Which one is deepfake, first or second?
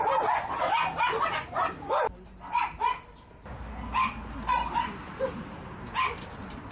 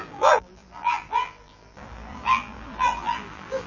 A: second